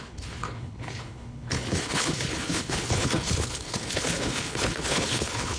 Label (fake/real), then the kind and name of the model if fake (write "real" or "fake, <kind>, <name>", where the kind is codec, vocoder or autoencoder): fake, codec, HILCodec